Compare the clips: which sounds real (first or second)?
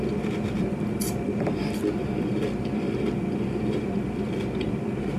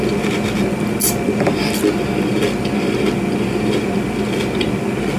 second